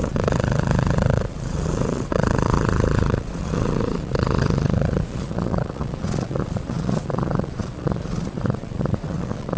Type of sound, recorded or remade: remade